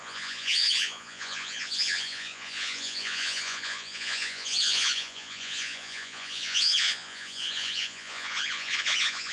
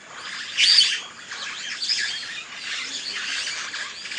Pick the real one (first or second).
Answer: second